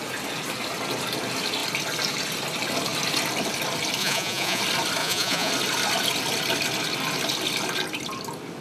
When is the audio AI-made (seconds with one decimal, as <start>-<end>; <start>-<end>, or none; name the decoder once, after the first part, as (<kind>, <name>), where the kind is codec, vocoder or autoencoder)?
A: 4.0-4.6 (vocoder, Vocos); 5.0-5.5